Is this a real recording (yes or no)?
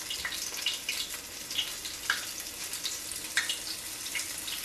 yes